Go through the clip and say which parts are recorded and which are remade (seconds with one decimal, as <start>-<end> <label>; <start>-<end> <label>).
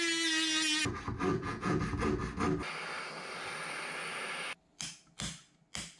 0.0-1.3 recorded; 1.3-1.8 remade; 1.8-6.0 recorded